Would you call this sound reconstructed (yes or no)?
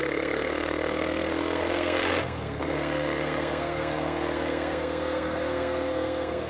yes